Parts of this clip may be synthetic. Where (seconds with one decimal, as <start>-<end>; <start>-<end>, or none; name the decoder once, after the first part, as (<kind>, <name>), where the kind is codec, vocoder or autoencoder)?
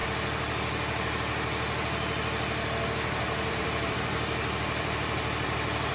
3.5-5.9 (vocoder, BigVGAN v2)